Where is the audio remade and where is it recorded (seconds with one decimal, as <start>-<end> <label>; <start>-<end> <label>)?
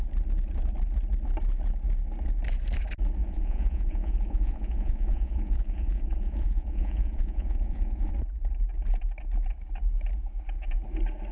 0.0-3.2 recorded; 3.2-8.1 remade; 8.1-11.3 recorded